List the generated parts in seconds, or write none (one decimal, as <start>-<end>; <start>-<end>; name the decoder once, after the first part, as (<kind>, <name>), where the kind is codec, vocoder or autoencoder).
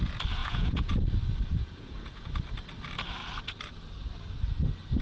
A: 0.4-0.9 (vocoder, Vocos); 1.6-2.3